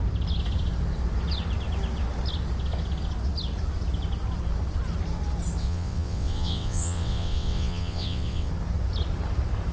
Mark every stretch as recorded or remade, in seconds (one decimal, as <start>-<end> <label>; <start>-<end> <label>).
0.0-5.6 recorded; 5.6-8.5 remade; 8.5-9.7 recorded